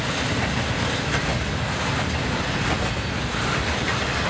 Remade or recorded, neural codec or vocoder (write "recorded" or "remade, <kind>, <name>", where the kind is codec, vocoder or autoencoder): recorded